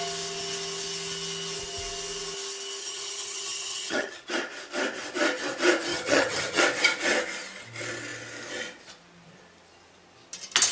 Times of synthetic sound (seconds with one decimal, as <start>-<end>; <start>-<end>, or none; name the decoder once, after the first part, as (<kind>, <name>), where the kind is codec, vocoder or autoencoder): 2.8-4.2 (vocoder, HiFi-GAN); 5.9-6.6